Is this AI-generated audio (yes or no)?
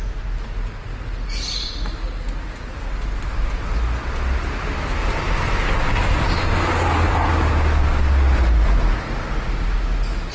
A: no